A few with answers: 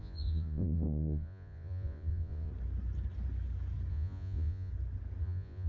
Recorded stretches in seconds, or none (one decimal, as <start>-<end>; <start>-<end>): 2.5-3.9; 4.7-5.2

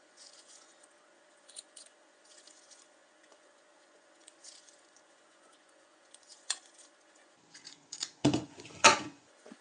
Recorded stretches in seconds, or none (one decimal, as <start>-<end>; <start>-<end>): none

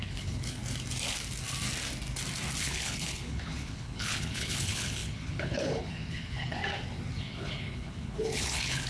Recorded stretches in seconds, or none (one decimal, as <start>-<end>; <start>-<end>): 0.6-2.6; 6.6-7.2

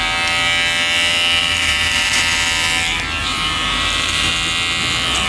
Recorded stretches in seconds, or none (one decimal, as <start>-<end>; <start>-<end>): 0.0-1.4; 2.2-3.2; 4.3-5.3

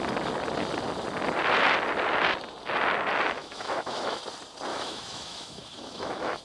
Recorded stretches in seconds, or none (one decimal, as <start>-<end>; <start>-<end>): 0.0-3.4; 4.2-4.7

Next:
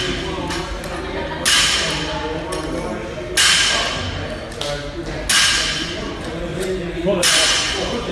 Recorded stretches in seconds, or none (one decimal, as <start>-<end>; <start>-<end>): 0.0-5.5

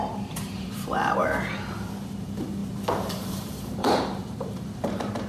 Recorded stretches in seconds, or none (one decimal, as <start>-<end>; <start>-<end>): 1.2-2.2; 2.6-3.1